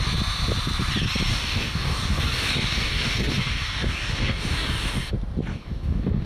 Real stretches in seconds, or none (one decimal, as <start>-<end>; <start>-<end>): 0.0-1.3; 5.1-5.5